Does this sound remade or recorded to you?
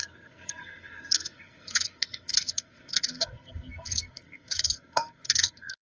remade